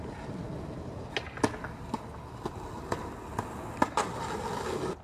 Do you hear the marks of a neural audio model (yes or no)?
no